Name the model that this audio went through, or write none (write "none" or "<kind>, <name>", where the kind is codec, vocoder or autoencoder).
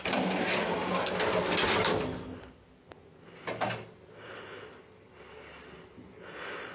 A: none